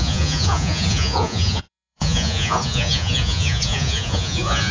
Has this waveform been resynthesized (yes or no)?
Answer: yes